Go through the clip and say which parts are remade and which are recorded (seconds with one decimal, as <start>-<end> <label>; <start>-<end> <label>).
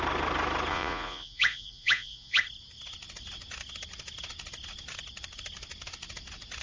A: 0.0-0.7 recorded; 0.7-2.4 remade; 2.4-6.6 recorded